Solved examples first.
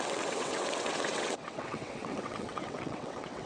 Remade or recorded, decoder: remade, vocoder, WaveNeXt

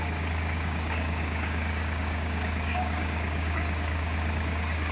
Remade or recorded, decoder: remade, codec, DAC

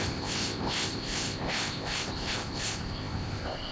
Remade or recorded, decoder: remade, codec, ZipCodec